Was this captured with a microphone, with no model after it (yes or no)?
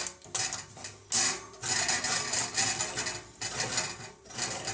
yes